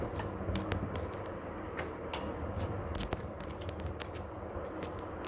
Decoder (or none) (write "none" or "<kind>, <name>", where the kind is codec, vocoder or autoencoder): none